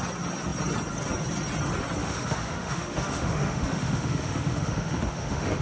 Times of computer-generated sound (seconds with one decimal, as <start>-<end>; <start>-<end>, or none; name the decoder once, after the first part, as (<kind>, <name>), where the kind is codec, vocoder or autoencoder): 2.0-5.6 (autoencoder, DAC-VAE)